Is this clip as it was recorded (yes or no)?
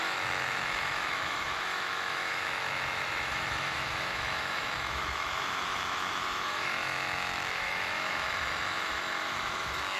no